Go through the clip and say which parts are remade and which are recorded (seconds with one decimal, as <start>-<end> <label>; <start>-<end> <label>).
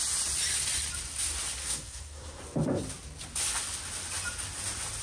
0.0-1.6 recorded; 1.6-2.4 remade; 2.4-5.0 recorded